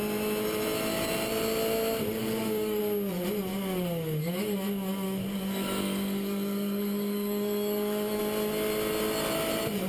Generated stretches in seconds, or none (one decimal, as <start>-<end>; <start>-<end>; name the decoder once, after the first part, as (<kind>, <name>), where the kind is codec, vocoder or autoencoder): 2.2-2.8 (codec, DAC); 3.5-8.2